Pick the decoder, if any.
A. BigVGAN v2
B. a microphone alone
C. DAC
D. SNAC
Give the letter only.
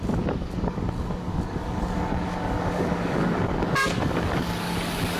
C